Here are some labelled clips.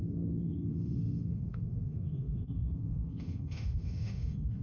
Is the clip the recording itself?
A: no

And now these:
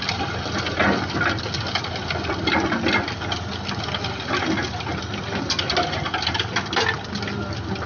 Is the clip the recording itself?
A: yes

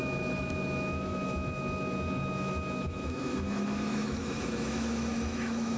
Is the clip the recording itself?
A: no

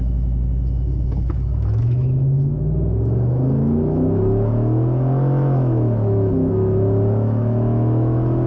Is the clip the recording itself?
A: no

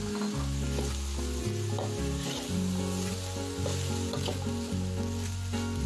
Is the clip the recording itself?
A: yes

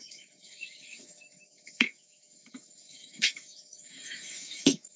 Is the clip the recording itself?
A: no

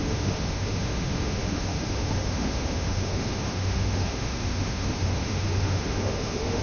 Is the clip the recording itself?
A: no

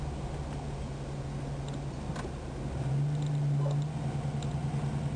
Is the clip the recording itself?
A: yes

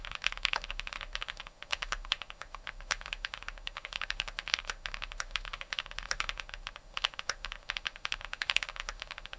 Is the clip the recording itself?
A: no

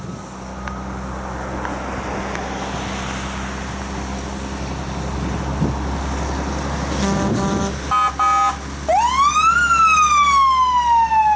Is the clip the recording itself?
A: yes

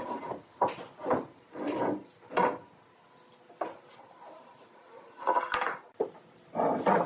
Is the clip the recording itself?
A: yes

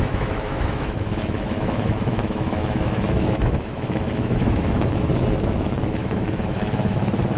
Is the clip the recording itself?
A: no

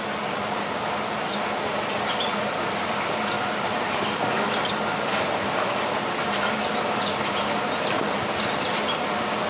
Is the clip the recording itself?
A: yes